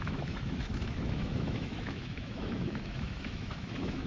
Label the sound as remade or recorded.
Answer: remade